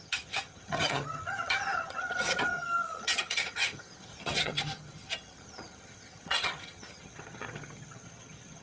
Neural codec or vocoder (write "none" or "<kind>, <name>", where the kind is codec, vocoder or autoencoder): vocoder, HiFi-GAN